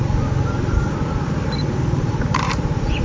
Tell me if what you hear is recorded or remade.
recorded